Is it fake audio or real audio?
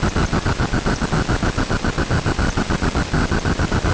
real